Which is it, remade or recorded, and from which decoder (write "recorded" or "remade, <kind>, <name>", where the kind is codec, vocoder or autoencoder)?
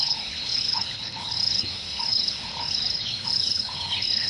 remade, codec, HILCodec